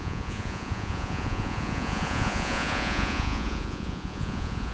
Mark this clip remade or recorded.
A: remade